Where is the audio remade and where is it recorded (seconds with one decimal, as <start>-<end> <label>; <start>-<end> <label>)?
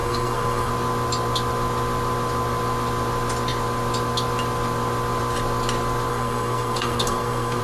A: 0.0-0.7 remade; 0.7-6.1 recorded; 6.1-7.6 remade